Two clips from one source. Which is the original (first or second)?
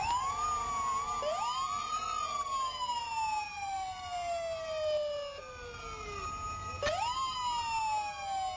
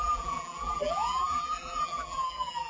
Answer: first